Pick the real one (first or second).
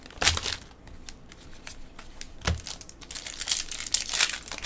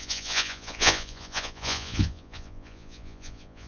first